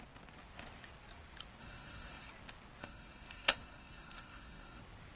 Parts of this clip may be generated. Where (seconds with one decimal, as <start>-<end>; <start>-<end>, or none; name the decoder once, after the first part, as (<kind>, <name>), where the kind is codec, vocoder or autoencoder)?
1.6-2.3 (codec, SNAC); 2.8-4.8